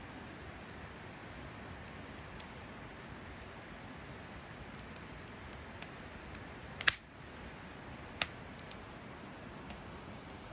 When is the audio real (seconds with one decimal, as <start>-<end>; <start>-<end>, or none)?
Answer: 0.0-10.5